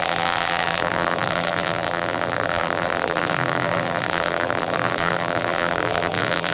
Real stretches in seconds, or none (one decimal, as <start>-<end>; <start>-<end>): none